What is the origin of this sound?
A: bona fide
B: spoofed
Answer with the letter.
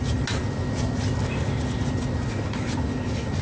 A